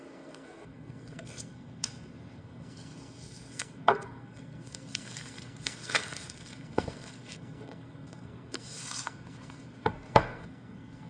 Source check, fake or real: fake